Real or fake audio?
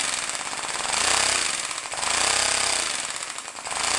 real